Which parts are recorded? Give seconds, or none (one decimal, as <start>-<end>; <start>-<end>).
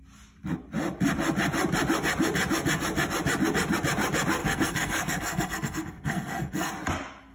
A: 0.0-4.4; 6.7-7.3